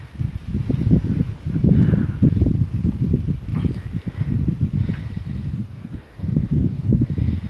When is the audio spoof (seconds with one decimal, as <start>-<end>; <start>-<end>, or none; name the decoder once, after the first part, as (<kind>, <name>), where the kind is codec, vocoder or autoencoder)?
5.6-7.1 (codec, DAC)